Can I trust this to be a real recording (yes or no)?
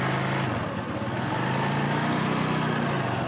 yes